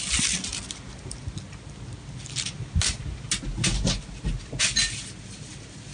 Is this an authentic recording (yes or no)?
yes